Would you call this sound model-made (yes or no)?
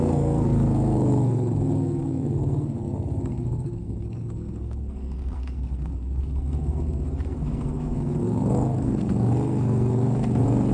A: yes